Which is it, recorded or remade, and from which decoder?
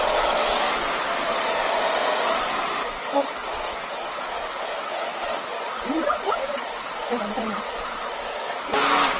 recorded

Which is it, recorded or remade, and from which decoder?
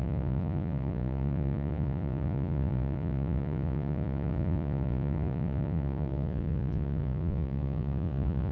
remade, vocoder, Vocos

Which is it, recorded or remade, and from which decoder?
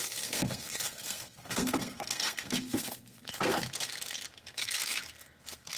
remade, codec, SNAC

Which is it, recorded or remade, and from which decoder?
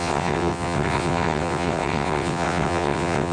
remade, vocoder, WaveNeXt